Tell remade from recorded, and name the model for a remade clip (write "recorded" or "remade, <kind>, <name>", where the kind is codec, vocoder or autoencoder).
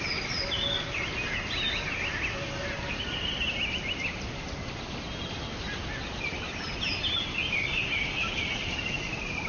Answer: recorded